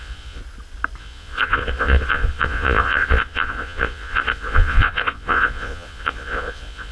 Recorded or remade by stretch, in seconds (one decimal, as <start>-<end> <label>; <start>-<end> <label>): 0.0-0.4 remade; 0.4-1.0 recorded; 1.0-6.9 remade